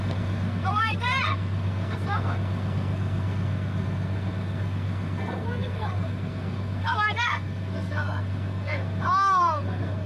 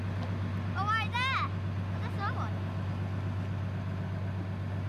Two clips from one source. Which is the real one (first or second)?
second